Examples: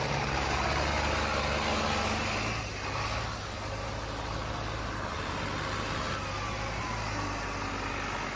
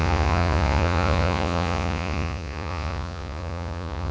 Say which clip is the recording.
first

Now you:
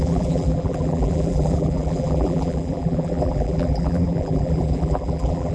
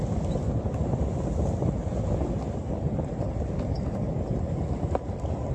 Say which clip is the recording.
second